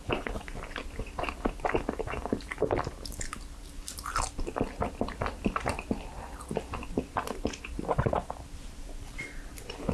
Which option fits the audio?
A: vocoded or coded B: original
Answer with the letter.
B